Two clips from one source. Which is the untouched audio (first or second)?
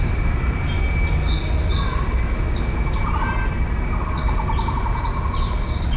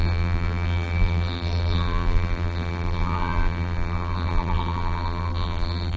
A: first